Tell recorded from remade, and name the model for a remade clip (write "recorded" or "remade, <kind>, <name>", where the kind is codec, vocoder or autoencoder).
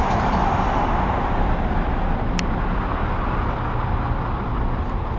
recorded